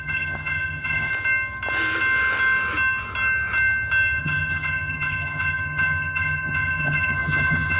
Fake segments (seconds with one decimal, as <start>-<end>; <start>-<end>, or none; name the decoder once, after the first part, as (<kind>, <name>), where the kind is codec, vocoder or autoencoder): 0.0-1.1 (vocoder, HiFi-GAN); 4.2-7.8